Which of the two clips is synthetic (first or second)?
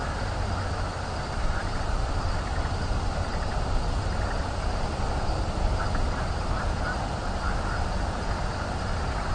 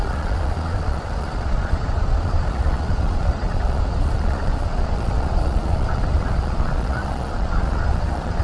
second